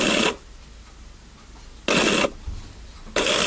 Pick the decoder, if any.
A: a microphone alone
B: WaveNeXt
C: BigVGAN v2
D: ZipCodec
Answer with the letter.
A